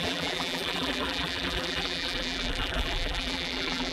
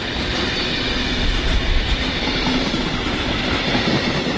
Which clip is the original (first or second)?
second